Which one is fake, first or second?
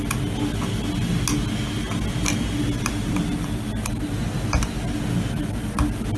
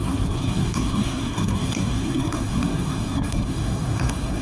second